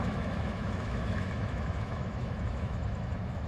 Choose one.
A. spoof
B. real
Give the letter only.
A